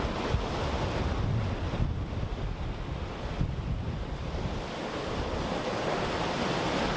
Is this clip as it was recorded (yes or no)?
yes